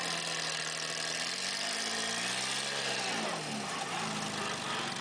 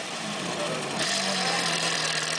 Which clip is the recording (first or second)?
first